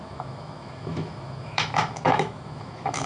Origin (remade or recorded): remade